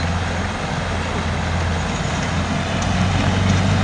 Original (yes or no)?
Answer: yes